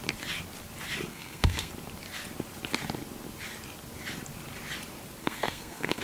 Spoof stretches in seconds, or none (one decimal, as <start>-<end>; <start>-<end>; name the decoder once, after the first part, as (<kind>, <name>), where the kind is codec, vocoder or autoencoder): 1.1-1.7 (codec, SNAC); 5.2-6.0